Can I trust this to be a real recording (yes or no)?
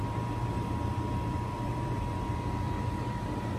no